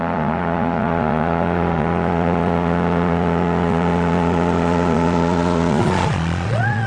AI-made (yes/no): yes